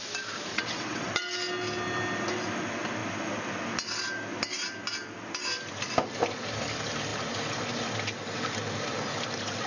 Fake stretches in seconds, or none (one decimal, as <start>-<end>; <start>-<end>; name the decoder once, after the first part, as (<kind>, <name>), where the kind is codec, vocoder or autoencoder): 0.5-1.1 (vocoder, WaveNeXt)